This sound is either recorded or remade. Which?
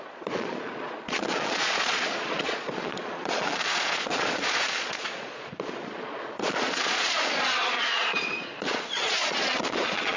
remade